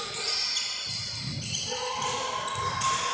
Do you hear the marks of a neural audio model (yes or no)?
no